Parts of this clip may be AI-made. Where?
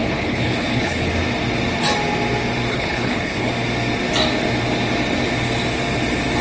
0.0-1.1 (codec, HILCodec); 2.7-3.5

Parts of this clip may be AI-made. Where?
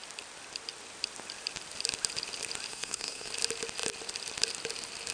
2.7-3.3 (codec, SNAC)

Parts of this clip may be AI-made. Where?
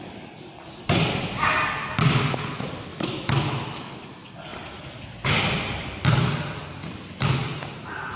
2.9-3.9 (autoencoder, DAC-VAE)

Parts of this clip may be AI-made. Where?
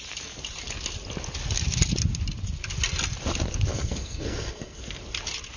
3.7-4.8 (codec, SNAC)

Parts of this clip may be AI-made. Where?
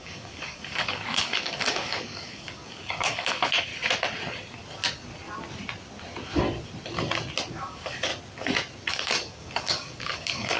0.0-3.7 (codec, DAC); 7.5-8.1; 8.9-10.6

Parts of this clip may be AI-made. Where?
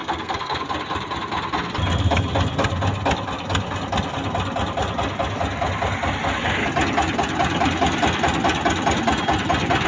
0.0-0.6 (codec, SNAC)